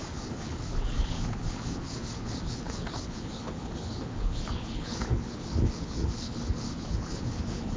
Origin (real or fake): fake